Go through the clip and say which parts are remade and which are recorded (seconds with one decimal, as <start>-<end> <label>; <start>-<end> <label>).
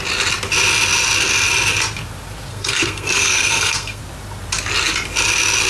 0.0-2.5 recorded; 2.5-4.0 remade; 4.0-5.7 recorded